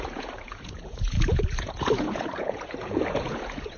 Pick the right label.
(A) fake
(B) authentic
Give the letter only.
A